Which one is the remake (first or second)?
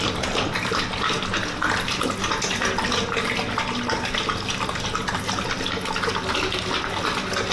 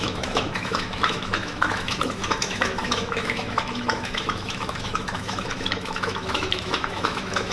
second